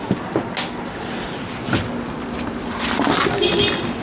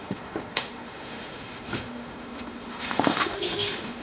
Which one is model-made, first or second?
second